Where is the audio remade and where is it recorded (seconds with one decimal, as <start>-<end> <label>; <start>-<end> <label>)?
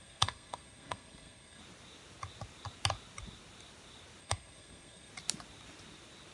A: 0.0-1.6 remade; 1.6-4.2 recorded; 4.2-5.1 remade; 5.1-6.3 recorded